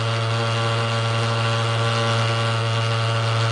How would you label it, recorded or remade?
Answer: recorded